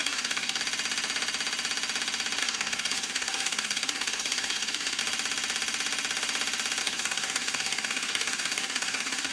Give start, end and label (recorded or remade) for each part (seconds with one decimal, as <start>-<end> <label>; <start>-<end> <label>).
0.0-0.6 remade; 0.6-2.4 recorded; 2.4-5.0 remade; 5.0-6.8 recorded; 6.8-9.3 remade